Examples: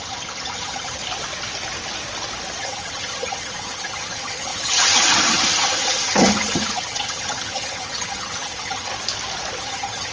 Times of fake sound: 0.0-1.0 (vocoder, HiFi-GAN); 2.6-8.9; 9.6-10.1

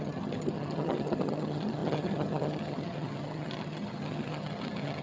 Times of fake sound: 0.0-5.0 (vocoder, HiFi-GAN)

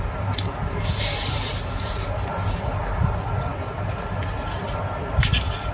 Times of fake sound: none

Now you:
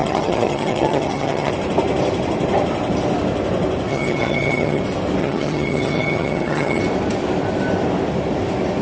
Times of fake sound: 0.0-1.5 (vocoder, HiFi-GAN); 3.9-4.8; 5.2-6.8

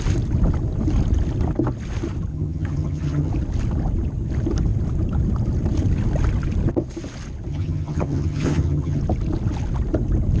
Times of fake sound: 2.3-3.3 (vocoder, HiFi-GAN); 7.5-9.0